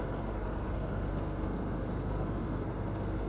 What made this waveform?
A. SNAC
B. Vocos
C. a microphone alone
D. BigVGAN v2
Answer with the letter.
A